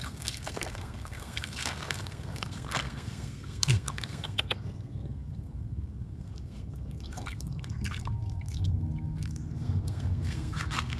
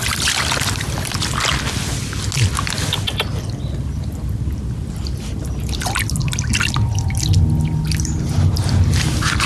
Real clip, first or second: second